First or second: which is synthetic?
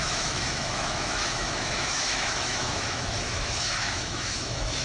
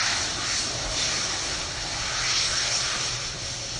first